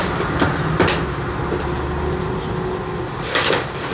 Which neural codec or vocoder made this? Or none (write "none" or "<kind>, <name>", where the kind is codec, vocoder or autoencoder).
none